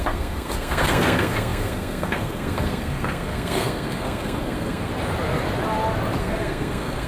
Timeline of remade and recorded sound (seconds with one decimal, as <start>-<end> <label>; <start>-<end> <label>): 0.0-4.9 remade; 4.9-6.2 recorded; 6.2-7.1 remade